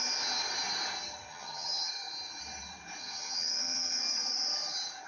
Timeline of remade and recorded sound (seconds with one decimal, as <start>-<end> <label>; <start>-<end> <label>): 0.0-1.3 recorded; 1.3-1.9 remade; 1.9-3.0 recorded; 3.0-4.0 remade; 4.0-5.1 recorded

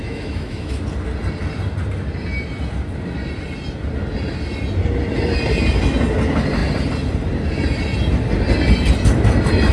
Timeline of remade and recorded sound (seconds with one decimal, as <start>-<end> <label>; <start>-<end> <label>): 0.0-0.8 remade; 0.8-9.7 recorded

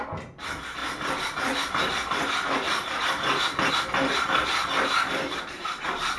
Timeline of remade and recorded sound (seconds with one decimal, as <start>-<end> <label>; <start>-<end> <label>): 0.0-4.6 recorded; 4.6-5.4 remade; 5.4-6.2 recorded

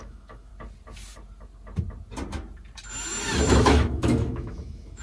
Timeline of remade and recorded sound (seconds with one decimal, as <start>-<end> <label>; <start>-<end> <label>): 0.0-0.5 remade; 0.5-3.5 recorded; 3.5-5.0 remade

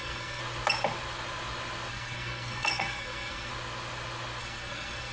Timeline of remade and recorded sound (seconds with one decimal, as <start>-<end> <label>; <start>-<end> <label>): 0.0-0.4 remade; 0.4-1.9 recorded; 1.9-3.5 remade; 3.5-4.4 recorded; 4.4-5.1 remade

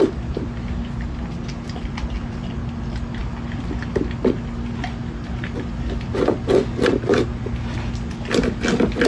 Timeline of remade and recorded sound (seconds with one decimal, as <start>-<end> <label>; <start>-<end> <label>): 0.0-9.1 recorded